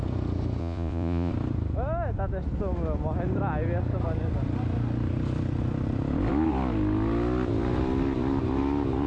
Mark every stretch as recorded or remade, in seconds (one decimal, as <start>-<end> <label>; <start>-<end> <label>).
0.0-0.6 recorded; 0.6-1.3 remade; 1.3-9.1 recorded